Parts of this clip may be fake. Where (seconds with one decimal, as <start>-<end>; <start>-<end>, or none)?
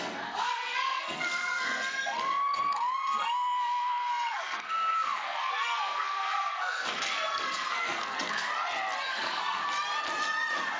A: 0.0-8.5; 9.1-9.6